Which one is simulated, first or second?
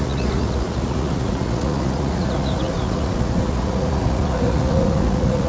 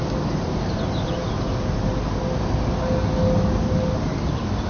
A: first